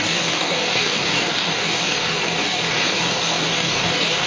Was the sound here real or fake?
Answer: fake